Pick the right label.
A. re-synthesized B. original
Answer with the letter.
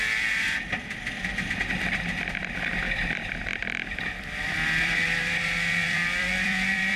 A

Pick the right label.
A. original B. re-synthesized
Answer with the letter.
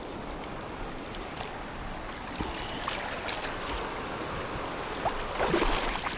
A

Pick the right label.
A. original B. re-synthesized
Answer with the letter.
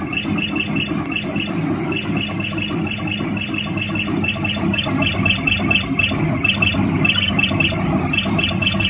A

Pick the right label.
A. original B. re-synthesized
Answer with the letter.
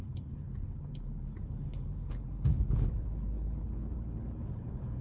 B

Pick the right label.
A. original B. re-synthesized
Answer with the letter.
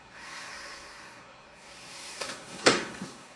B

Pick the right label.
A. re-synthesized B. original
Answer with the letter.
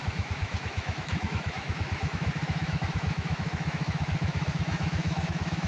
A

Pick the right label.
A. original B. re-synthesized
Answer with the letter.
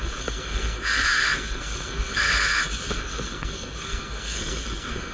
B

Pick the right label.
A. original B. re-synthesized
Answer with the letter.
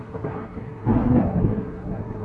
B